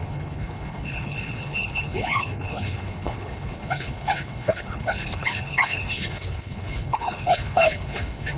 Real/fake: fake